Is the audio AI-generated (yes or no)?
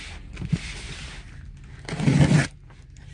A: no